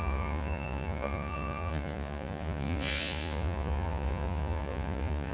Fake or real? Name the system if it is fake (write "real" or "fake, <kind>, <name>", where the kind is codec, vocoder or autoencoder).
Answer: fake, vocoder, Vocos